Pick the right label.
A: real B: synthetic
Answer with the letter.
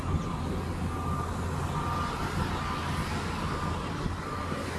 A